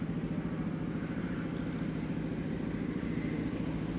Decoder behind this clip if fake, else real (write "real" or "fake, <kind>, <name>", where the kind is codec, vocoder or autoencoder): real